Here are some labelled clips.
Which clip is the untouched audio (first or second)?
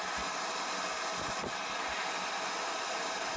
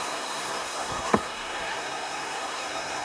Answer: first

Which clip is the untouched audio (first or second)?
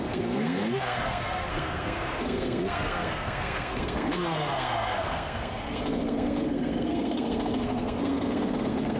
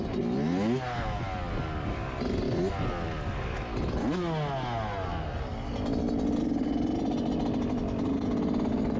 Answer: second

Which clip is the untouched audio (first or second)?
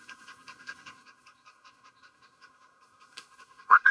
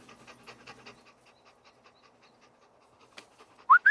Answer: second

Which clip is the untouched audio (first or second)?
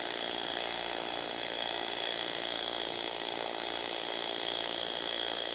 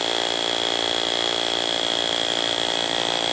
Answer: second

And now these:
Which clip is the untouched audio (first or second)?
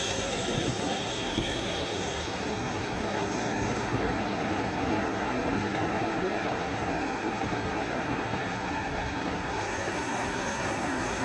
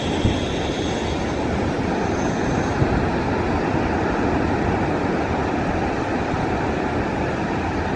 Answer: second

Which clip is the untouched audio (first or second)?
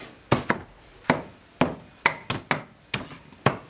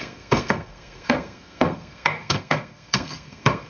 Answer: first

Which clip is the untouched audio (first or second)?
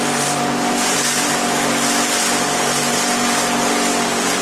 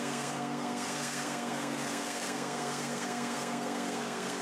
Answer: first